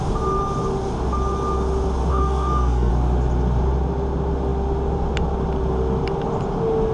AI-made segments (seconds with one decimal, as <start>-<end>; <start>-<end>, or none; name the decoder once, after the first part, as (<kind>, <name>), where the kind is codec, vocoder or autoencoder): 2.1-2.9 (codec, SNAC)